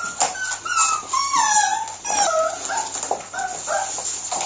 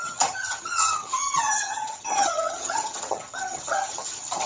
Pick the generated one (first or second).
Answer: second